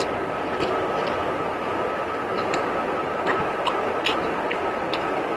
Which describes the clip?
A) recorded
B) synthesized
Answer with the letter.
A